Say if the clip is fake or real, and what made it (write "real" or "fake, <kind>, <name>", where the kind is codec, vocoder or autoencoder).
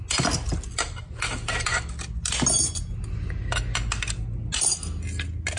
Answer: real